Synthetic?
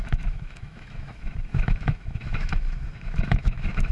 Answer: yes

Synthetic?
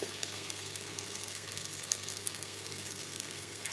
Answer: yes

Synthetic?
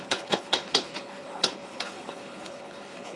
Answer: yes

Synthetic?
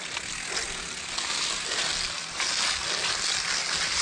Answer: no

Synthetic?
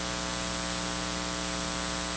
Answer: no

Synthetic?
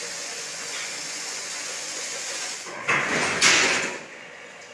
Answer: yes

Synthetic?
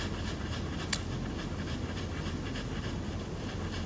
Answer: no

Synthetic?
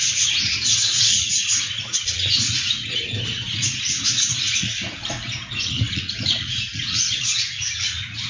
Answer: yes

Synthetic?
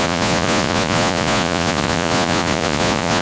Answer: yes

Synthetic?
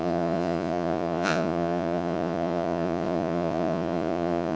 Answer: yes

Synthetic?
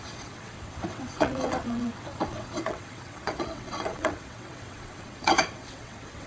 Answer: yes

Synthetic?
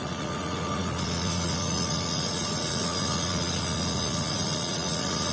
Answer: yes